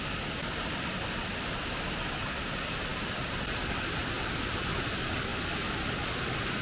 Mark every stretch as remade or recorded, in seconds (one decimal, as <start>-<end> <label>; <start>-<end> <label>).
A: 0.0-6.6 recorded

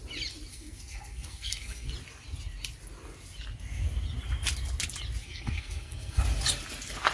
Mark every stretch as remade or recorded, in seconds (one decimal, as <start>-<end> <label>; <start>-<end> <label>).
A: 0.0-0.5 recorded; 0.5-1.9 remade; 1.9-5.2 recorded; 5.2-6.2 remade; 6.2-7.1 recorded

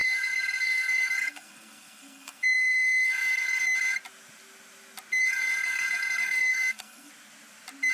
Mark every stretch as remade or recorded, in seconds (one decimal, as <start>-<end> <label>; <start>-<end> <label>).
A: 0.0-3.6 remade; 3.6-5.2 recorded; 5.2-7.1 remade; 7.1-7.9 recorded

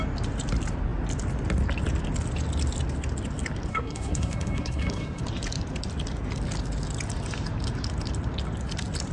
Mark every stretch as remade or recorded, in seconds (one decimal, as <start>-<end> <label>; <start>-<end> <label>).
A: 0.0-3.7 recorded; 3.7-5.2 remade; 5.2-9.1 recorded

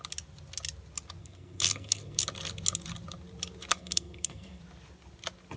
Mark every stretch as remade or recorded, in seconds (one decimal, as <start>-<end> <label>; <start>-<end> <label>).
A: 0.0-1.2 recorded; 1.2-2.2 remade; 2.2-3.7 recorded; 3.7-4.6 remade; 4.6-5.6 recorded

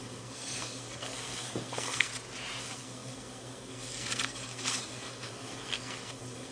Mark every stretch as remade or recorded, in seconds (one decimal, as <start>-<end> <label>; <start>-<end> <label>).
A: 0.0-2.1 remade; 2.1-2.6 recorded; 2.6-6.5 remade